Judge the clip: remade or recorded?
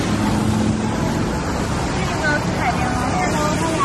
recorded